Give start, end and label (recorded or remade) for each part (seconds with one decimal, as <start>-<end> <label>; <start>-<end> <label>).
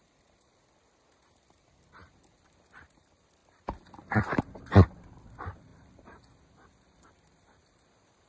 0.0-2.0 remade; 2.0-3.0 recorded; 3.0-5.7 remade; 5.7-6.4 recorded; 6.4-8.3 remade